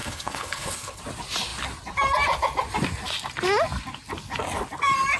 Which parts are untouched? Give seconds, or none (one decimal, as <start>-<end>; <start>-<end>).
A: 1.0-5.2

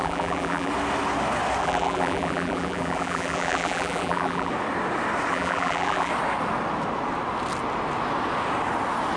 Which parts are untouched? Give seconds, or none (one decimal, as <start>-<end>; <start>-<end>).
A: 0.7-1.6; 4.5-5.3; 6.1-9.2

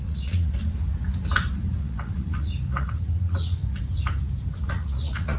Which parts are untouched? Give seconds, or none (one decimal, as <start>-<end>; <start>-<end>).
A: 0.6-1.8; 3.6-4.6

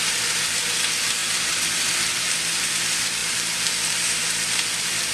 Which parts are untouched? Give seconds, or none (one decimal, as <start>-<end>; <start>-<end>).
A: 0.0-5.1

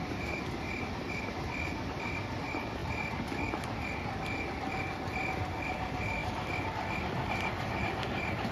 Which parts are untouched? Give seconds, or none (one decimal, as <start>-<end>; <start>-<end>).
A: 0.0-8.5